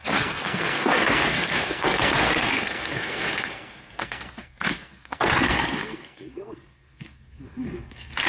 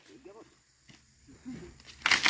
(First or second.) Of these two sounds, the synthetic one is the first